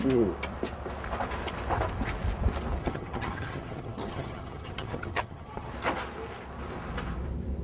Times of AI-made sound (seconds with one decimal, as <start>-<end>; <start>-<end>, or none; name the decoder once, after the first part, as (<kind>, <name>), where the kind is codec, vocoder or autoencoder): 2.8-5.7 (vocoder, HiFi-GAN)